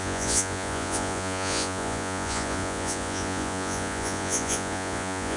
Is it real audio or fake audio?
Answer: fake